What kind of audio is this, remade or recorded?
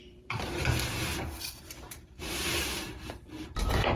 remade